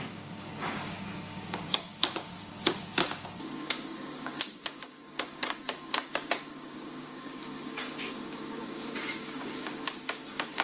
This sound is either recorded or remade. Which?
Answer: remade